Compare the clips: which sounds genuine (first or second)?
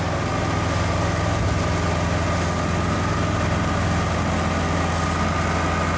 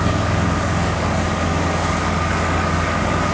first